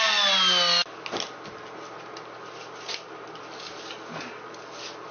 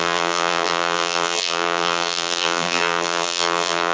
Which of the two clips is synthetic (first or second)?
second